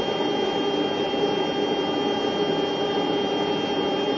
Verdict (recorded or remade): recorded